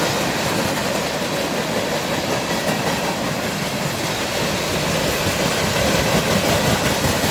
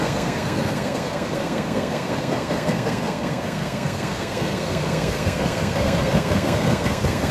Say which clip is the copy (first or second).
second